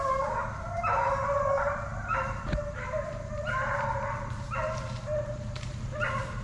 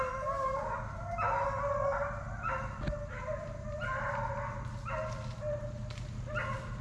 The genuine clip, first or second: second